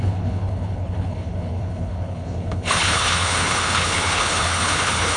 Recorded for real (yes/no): no